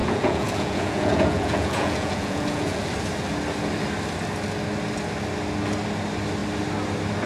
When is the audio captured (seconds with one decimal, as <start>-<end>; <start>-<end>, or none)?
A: 2.8-7.3